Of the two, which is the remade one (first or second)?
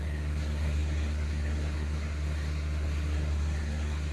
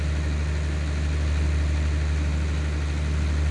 first